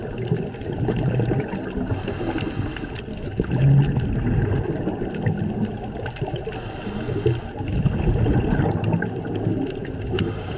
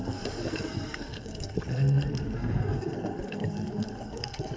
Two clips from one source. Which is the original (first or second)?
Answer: first